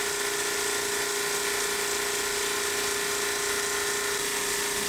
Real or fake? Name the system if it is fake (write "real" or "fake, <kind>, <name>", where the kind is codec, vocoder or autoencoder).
real